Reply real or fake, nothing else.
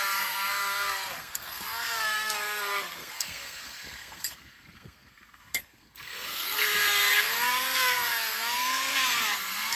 fake